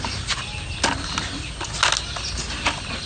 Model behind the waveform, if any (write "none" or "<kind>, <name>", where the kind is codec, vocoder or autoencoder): none